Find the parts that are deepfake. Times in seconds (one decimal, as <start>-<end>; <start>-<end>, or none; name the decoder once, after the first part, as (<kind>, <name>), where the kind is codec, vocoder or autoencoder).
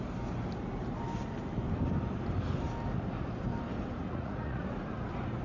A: 4.0-4.6 (vocoder, Vocos)